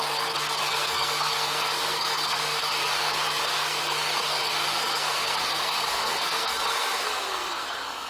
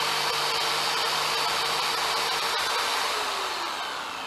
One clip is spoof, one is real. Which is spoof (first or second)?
first